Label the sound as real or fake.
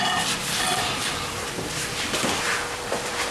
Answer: fake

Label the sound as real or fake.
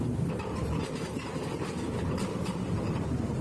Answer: fake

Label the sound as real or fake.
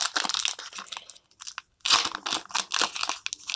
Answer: real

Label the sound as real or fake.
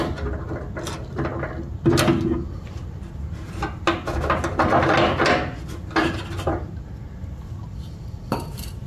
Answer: real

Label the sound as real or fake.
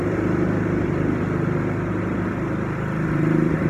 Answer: fake